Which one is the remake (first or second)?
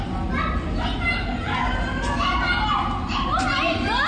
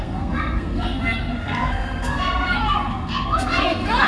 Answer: second